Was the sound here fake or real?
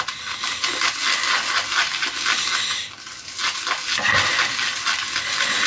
real